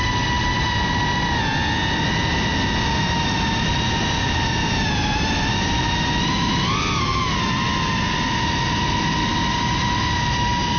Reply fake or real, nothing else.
real